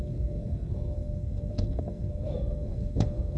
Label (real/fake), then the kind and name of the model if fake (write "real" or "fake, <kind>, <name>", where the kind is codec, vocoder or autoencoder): fake, codec, SNAC